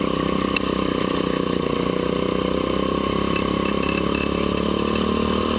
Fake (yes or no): no